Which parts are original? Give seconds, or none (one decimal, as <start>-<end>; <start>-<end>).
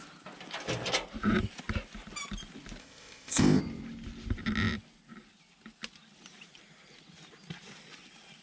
0.0-2.8; 3.6-8.4